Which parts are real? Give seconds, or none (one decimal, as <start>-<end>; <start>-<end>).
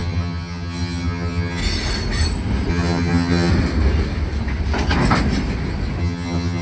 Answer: 1.6-2.7; 3.5-6.0